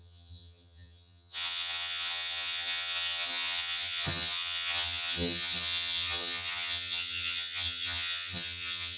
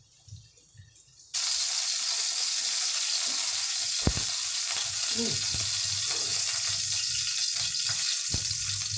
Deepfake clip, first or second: first